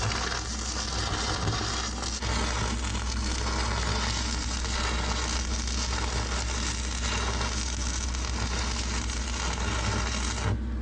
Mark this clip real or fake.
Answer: real